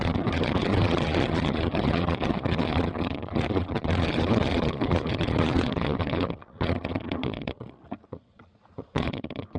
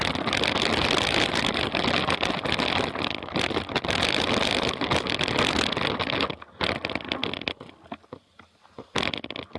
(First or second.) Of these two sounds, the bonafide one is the second